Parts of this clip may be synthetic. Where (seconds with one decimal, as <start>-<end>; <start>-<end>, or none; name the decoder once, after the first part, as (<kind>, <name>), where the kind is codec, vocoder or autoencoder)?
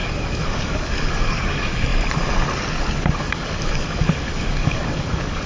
0.0-1.9 (codec, DAC); 3.2-5.5